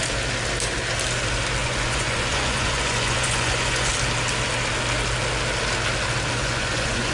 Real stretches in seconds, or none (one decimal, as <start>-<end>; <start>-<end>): 0.0-1.6; 3.9-6.4